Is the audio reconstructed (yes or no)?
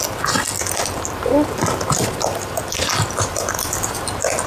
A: no